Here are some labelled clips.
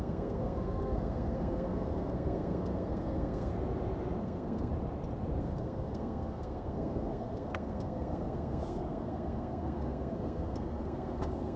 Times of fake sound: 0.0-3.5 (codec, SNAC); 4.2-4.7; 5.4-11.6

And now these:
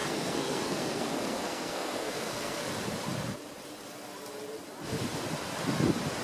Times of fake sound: 0.0-2.7 (codec, SNAC)

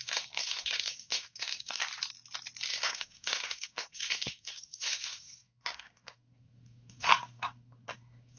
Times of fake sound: 0.0-1.8 (codec, SNAC); 2.7-8.4

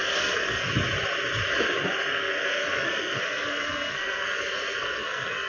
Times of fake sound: 0.0-0.7 (codec, SNAC); 2.1-5.5

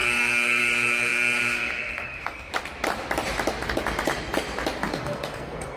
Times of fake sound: 0.0-2.5 (codec, SNAC); 4.9-5.8

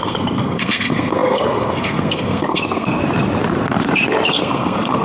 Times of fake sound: 0.0-3.0 (codec, SNAC); 4.3-5.0